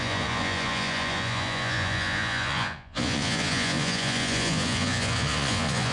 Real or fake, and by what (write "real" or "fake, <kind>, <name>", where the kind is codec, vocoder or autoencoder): fake, vocoder, Vocos